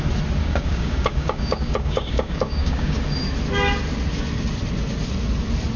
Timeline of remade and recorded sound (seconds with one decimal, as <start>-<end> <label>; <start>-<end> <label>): 0.0-0.4 recorded; 0.4-3.0 remade; 3.0-5.8 recorded